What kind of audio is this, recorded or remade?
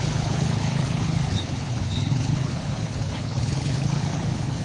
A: remade